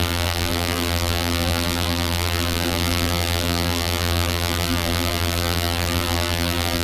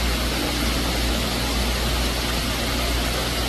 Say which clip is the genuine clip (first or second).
second